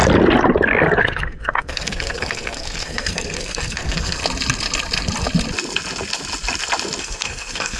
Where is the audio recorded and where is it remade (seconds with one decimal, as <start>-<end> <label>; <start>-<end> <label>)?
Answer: 0.0-1.0 recorded; 1.0-4.2 remade; 4.2-7.0 recorded; 7.0-7.8 remade